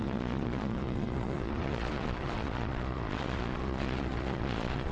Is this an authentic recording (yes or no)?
no